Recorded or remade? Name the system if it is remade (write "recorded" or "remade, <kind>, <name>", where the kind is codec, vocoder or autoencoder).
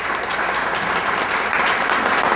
recorded